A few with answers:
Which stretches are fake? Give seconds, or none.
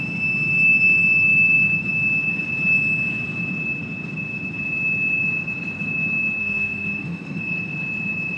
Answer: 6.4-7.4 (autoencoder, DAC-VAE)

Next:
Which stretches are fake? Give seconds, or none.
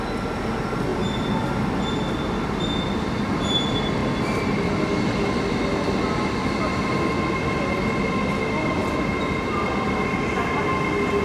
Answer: none